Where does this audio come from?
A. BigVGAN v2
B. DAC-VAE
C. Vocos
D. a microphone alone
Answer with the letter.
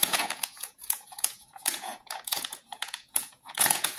C